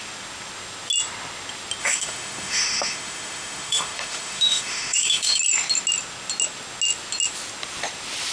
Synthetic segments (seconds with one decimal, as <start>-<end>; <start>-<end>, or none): 1.8-5.4